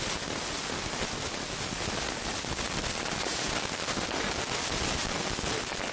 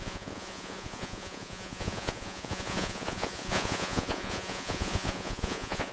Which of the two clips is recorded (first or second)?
first